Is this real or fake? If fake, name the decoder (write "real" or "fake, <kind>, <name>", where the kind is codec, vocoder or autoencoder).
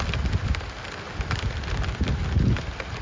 real